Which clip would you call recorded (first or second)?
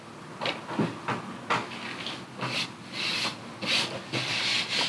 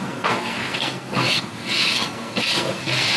first